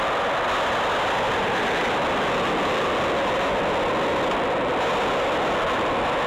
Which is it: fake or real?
real